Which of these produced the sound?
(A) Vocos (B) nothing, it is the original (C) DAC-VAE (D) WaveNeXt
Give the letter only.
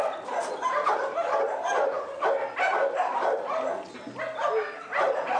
B